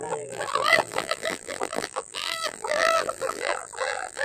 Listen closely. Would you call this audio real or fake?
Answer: fake